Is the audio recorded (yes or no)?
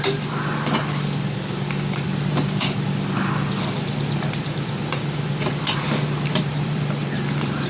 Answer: no